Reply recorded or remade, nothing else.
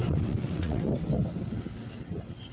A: remade